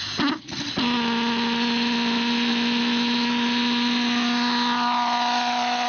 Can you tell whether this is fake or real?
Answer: real